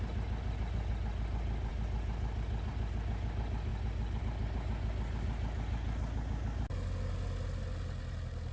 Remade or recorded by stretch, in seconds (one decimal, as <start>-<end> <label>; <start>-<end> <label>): 0.0-8.5 recorded